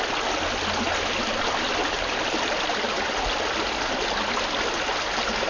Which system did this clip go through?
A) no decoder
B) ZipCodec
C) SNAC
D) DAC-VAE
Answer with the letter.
A